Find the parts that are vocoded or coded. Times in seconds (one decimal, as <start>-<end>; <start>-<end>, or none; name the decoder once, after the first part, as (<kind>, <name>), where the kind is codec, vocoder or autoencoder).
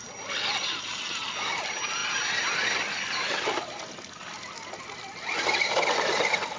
none